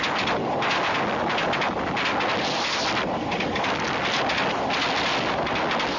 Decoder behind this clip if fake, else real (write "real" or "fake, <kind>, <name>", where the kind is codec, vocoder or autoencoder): real